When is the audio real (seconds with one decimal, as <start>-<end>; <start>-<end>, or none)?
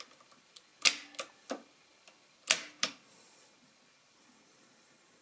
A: 0.0-5.2